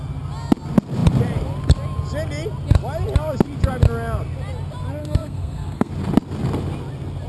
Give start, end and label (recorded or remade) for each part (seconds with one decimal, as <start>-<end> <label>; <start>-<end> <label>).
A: 0.0-5.0 recorded; 5.0-5.9 remade; 5.9-7.3 recorded